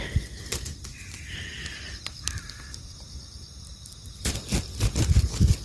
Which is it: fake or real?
real